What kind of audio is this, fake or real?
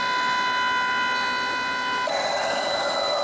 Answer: real